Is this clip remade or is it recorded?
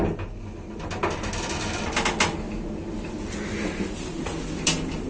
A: recorded